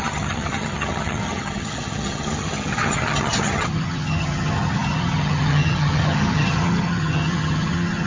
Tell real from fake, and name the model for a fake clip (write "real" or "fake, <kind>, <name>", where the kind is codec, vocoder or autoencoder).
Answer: fake, vocoder, HiFi-GAN